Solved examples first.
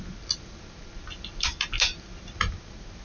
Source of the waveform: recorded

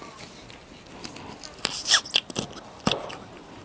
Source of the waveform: recorded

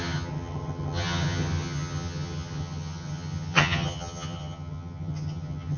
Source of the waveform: remade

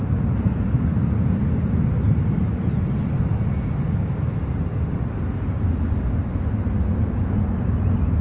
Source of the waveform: recorded